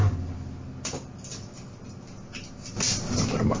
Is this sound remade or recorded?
recorded